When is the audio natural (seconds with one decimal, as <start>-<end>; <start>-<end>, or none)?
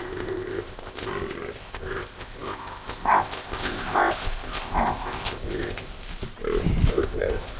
1.1-1.6; 6.1-6.9